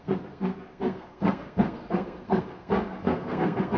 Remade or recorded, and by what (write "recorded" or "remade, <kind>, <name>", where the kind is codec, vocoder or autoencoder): remade, codec, SNAC